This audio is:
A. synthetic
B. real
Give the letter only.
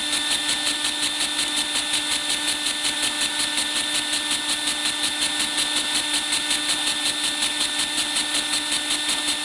B